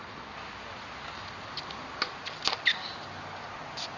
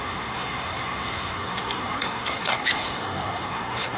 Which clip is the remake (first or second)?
second